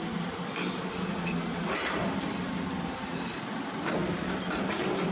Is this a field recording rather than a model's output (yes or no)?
yes